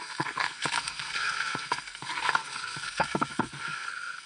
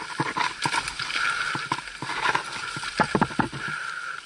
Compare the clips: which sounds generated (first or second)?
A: first